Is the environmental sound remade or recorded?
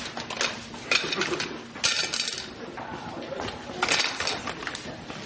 recorded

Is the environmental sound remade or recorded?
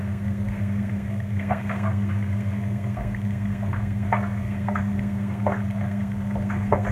remade